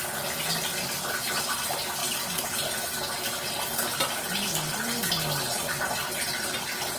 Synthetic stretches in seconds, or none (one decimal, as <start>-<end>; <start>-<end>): none